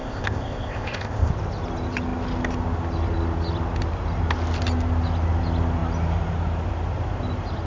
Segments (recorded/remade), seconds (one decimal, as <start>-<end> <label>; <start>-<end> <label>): 0.0-1.3 remade; 1.3-7.7 recorded